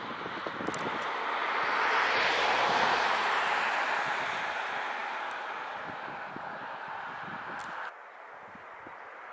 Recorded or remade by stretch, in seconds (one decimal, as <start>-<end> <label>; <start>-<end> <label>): 0.0-1.4 recorded; 1.4-3.6 remade; 3.6-9.3 recorded